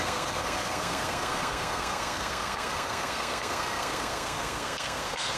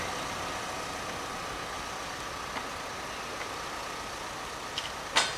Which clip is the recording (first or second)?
second